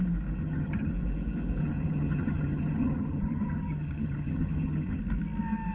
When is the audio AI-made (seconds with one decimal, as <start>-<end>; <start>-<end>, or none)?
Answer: 0.4-0.9; 1.6-5.0